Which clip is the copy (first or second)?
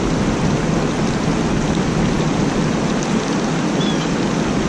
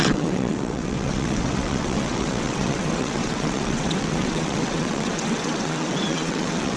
second